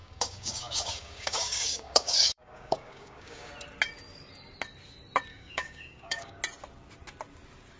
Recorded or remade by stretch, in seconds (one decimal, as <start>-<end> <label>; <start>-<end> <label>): 0.0-3.5 remade; 3.5-5.3 recorded; 5.3-6.4 remade; 6.4-7.8 recorded